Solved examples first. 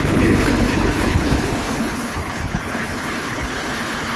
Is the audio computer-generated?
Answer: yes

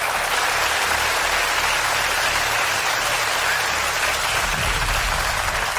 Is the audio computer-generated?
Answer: no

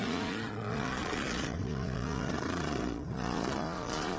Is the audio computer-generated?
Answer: yes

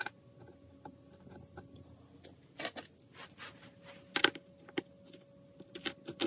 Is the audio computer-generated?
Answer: no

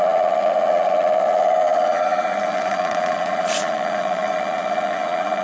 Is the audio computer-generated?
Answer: yes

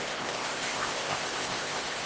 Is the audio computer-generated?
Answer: yes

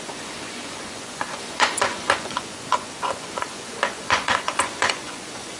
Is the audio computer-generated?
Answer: yes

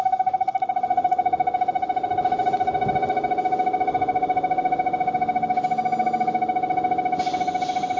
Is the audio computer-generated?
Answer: no